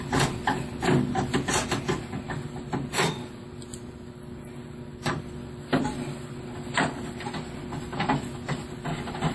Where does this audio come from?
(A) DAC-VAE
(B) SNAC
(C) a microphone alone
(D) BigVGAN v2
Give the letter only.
D